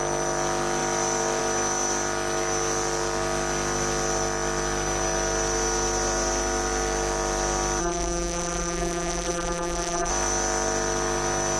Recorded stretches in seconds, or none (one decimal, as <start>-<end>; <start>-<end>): 0.0-7.8; 10.1-11.6